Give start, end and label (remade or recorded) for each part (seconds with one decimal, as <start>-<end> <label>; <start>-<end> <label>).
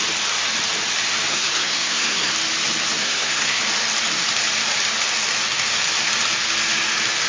0.0-1.3 recorded; 1.3-2.3 remade; 2.3-3.0 recorded; 3.0-3.6 remade; 3.6-7.3 recorded